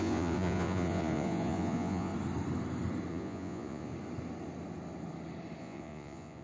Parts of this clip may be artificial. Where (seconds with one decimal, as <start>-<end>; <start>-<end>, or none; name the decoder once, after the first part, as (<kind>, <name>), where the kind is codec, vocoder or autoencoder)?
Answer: 0.0-2.1 (vocoder, Vocos); 3.1-3.9; 5.6-6.4